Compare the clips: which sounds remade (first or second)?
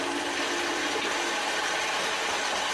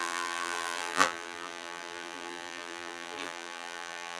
second